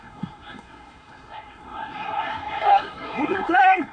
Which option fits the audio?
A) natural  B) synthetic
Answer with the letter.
B